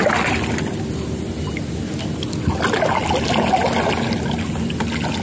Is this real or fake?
real